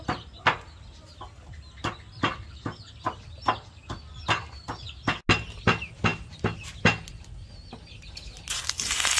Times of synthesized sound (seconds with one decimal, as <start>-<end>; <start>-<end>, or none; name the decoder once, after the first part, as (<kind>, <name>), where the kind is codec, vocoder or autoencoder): none